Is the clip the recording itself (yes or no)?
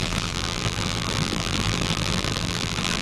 no